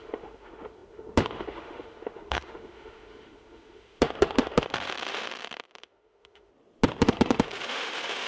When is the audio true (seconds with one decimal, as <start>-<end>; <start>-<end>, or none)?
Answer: 6.5-7.0